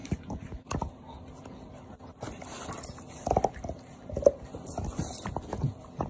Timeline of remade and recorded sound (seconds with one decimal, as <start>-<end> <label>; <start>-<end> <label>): 0.0-0.9 remade; 0.9-6.1 recorded